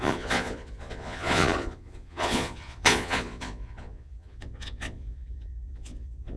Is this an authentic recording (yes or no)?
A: no